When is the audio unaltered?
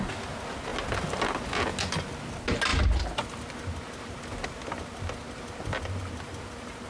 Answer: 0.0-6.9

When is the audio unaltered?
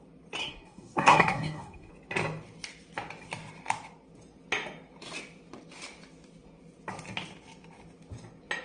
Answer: 0.0-0.4; 1.9-8.6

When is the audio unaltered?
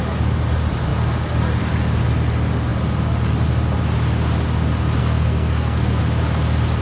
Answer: 0.0-5.0; 6.0-6.8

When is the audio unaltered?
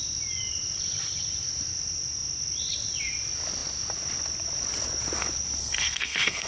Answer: 0.0-5.6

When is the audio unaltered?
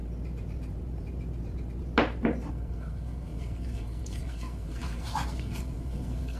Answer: 0.0-2.5